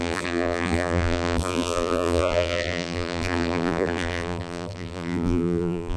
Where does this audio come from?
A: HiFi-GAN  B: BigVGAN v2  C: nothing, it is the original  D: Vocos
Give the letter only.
B